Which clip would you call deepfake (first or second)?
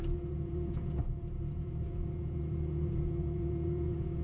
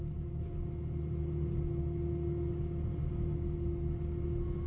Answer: first